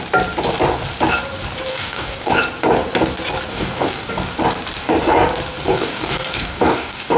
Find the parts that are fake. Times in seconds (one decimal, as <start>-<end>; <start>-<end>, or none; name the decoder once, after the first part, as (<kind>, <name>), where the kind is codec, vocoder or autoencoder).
1.7-2.3 (codec, DAC); 3.5-4.1; 5.7-7.2